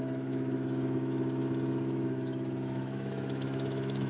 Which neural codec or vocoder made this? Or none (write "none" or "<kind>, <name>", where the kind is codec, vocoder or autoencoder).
autoencoder, DAC-VAE